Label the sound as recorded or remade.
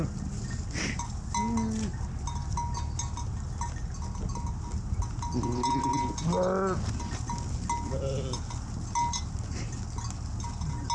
recorded